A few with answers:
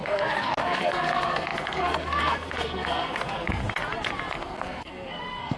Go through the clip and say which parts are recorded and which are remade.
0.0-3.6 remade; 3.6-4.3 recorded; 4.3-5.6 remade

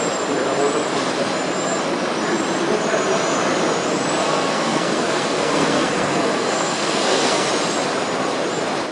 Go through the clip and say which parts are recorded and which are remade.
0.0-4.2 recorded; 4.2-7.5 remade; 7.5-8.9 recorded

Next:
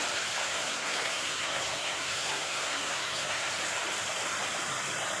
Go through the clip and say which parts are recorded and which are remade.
0.0-0.4 recorded; 0.4-3.5 remade; 3.5-5.2 recorded

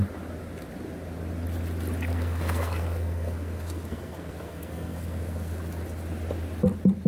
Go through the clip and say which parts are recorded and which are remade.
0.0-2.1 recorded; 2.1-5.6 remade; 5.6-7.1 recorded